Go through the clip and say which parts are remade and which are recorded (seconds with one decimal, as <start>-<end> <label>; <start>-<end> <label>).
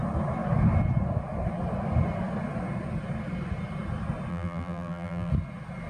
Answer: 0.0-4.3 recorded; 4.3-5.3 remade; 5.3-5.9 recorded